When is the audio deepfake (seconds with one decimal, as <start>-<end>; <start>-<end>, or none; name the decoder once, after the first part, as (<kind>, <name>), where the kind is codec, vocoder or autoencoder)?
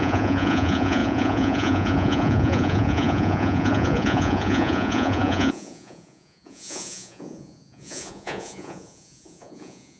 0.0-10.0 (vocoder, Vocos)